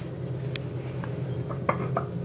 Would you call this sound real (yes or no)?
yes